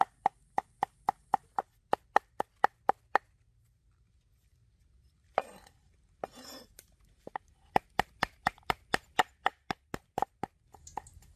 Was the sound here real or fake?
real